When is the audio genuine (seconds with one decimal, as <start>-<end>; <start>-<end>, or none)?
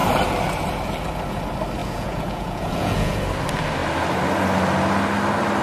0.0-1.8; 3.2-5.6